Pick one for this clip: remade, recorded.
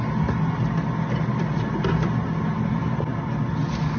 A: recorded